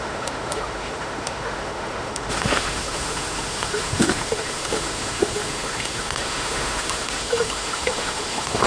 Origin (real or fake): fake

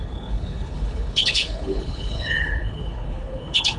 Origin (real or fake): fake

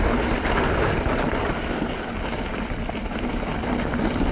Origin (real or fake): real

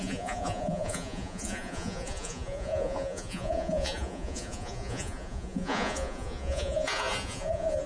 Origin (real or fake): fake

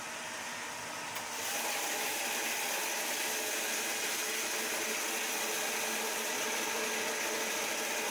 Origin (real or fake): real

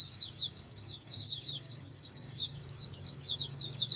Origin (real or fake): fake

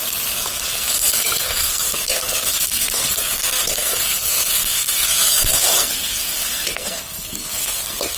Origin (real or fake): fake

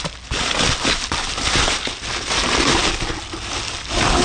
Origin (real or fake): real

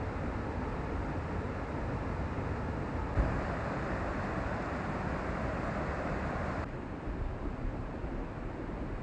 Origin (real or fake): real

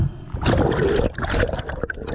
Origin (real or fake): real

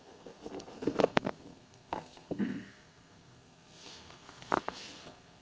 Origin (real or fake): fake